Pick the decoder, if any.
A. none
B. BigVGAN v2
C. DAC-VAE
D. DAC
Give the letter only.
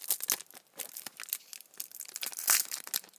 A